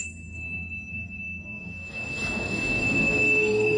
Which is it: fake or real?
fake